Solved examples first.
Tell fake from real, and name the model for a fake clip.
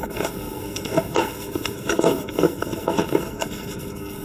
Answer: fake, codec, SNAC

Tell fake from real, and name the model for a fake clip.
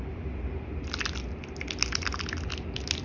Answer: real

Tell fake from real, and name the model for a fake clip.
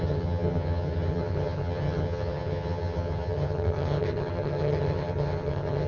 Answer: fake, vocoder, HiFi-GAN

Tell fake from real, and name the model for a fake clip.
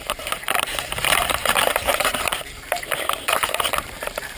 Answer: fake, vocoder, BigVGAN v2